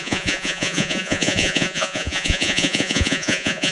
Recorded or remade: remade